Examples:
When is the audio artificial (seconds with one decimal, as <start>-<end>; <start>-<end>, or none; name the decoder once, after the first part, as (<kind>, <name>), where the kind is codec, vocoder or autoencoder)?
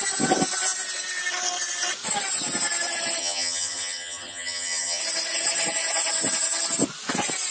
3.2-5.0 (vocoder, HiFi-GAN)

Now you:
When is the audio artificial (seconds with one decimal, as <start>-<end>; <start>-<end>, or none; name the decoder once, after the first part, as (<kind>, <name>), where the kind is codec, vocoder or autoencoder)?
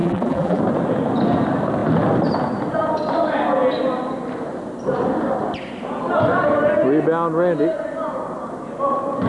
0.0-0.6 (vocoder, BigVGAN v2)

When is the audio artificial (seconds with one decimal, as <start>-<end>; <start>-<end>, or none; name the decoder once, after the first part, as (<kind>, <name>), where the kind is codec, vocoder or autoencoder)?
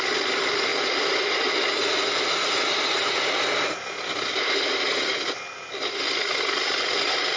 none